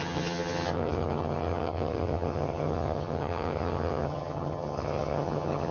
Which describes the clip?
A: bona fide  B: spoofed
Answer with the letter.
B